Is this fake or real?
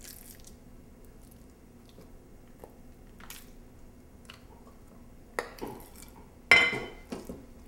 real